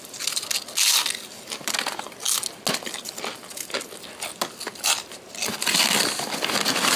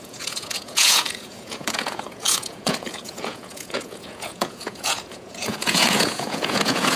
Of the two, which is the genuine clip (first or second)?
first